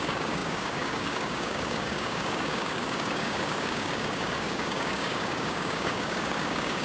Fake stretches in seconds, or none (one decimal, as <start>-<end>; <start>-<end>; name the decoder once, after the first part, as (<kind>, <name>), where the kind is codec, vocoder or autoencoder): 0.0-6.8 (codec, DAC)